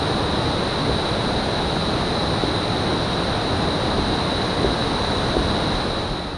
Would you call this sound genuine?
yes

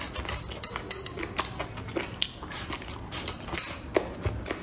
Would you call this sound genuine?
yes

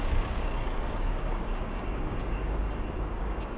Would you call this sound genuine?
no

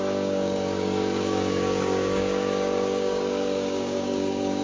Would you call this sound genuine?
no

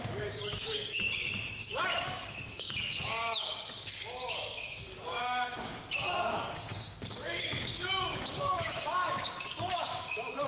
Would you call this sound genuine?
no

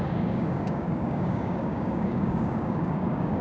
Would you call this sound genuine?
no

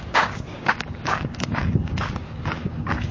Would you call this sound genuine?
no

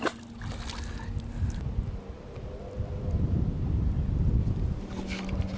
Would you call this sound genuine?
yes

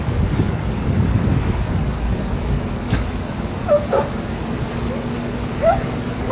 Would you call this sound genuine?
no